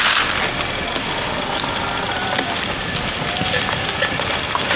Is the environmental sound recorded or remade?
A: recorded